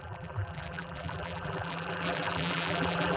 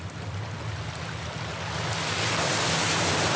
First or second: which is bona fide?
second